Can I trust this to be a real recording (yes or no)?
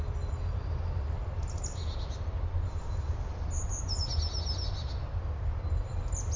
yes